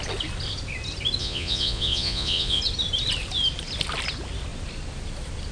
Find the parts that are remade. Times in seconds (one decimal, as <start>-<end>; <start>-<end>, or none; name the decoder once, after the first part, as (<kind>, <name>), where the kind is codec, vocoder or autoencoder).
1.2-2.6 (vocoder, Vocos)